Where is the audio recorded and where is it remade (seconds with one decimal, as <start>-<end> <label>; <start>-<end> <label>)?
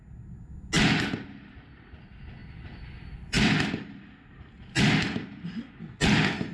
0.0-2.4 recorded; 2.4-4.0 remade; 4.0-4.6 recorded; 4.6-5.9 remade; 5.9-6.5 recorded